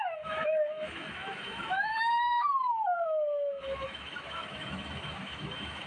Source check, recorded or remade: remade